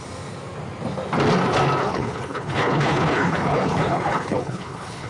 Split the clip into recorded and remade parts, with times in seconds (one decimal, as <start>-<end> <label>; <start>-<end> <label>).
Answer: 0.0-1.8 recorded; 1.8-5.1 remade